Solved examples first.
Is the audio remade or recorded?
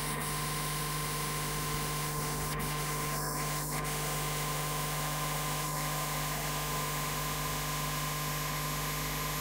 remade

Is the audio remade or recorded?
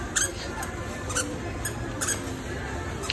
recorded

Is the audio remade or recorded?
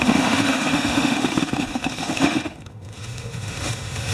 remade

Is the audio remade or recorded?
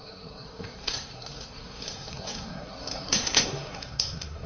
remade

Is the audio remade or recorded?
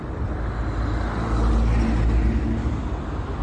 recorded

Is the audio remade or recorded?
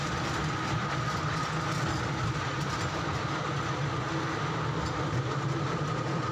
recorded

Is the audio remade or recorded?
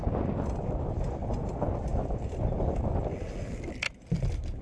recorded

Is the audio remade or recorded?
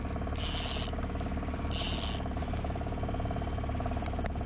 recorded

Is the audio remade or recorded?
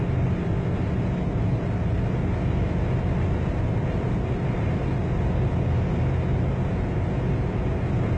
recorded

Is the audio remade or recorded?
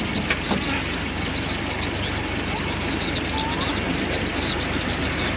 recorded